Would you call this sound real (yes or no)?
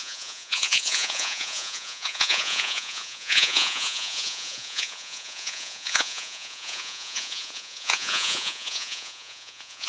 no